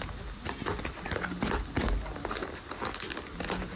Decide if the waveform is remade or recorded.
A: recorded